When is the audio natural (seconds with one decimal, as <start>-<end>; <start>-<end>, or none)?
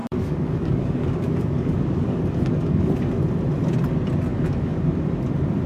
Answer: 3.1-4.3; 4.8-5.7